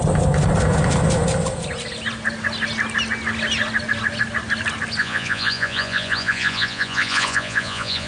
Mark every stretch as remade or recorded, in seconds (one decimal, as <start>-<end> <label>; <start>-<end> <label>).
0.0-5.0 recorded; 5.0-8.1 remade